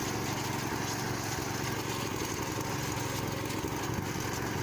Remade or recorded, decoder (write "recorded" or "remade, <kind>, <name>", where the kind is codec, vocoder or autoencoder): recorded